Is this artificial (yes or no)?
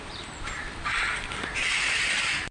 yes